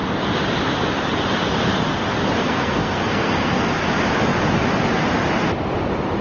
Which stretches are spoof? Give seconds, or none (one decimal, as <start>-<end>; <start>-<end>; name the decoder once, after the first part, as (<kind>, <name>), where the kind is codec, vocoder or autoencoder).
2.4-3.7 (codec, SNAC)